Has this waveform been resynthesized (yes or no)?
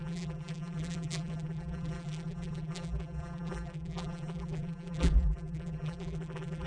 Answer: yes